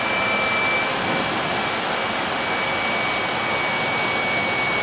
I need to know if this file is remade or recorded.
recorded